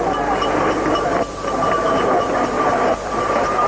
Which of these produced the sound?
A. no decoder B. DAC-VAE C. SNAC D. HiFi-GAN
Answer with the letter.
A